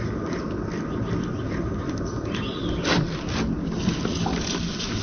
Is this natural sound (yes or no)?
yes